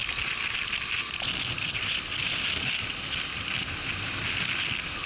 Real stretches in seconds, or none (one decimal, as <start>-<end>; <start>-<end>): 0.0-5.1